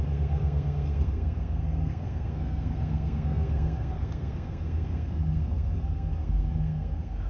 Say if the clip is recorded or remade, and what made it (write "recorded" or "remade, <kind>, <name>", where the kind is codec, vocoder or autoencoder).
remade, codec, SNAC